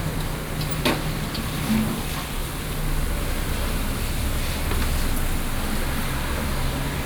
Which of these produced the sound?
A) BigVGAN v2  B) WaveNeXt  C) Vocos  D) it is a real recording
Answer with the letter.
D